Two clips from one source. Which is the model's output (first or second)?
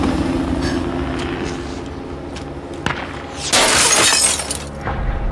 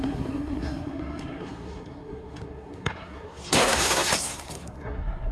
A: second